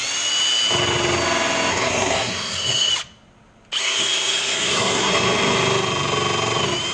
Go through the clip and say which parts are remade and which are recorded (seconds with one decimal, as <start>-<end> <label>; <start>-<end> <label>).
0.0-1.7 recorded; 1.7-2.9 remade; 2.9-3.8 recorded; 3.8-5.1 remade; 5.1-6.9 recorded